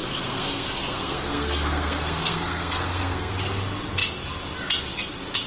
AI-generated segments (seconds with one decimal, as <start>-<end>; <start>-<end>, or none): 0.0-3.3